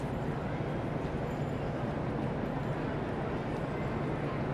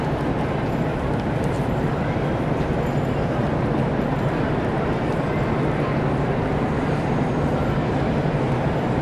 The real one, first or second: first